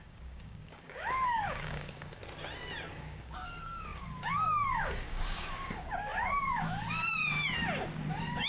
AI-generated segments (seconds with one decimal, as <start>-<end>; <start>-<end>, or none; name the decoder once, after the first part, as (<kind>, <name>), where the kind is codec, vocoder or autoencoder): 0.0-2.2 (codec, DAC); 2.9-7.2; 8.1-8.5